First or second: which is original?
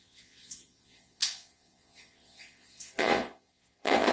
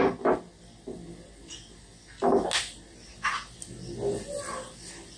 second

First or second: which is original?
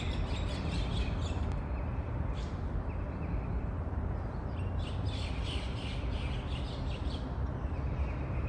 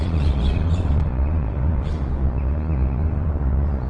first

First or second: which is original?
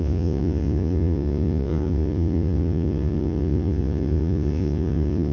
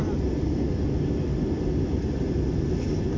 second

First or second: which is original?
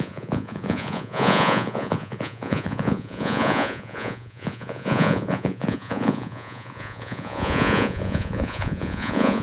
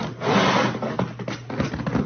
second